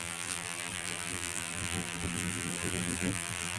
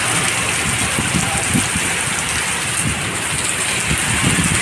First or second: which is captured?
second